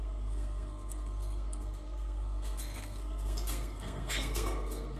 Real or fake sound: fake